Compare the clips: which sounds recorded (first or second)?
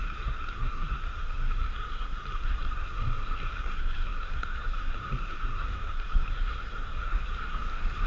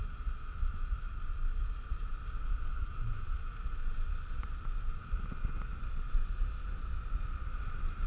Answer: second